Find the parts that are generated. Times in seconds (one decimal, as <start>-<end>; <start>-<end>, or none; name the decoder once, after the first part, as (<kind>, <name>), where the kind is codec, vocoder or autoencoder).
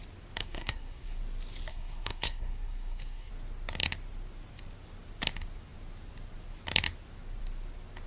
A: 0.4-1.2 (codec, SNAC); 1.7-3.3